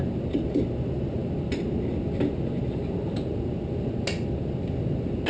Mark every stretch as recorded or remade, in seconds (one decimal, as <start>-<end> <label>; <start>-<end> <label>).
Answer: 0.0-5.3 recorded